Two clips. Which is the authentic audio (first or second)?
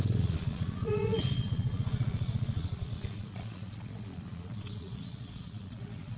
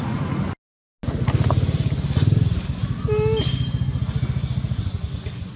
second